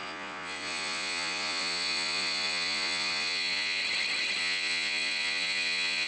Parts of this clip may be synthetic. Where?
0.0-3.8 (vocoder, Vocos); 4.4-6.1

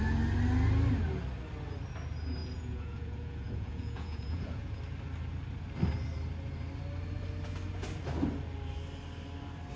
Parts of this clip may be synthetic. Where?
2.4-4.8 (vocoder, Vocos)

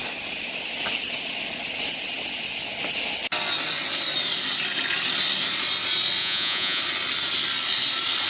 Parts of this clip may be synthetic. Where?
6.2-6.8 (vocoder, Vocos)

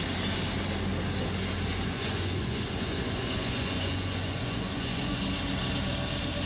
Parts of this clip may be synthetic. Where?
1.7-5.2 (vocoder, Vocos)

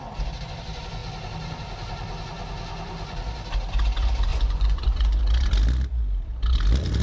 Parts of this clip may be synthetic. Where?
4.3-5.2 (vocoder, Vocos)

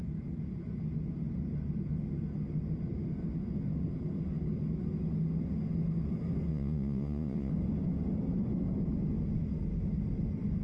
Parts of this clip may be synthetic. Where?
6.5-7.5 (vocoder, Vocos)

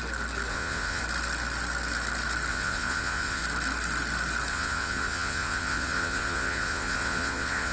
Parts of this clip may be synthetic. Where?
0.5-1.0 (vocoder, Vocos); 2.5-3.4; 4.5-7.7

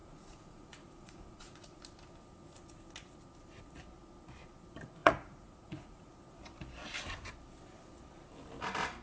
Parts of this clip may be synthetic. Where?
0.0-1.8 (vocoder, Vocos); 5.0-6.1